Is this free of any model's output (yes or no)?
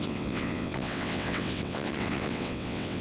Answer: no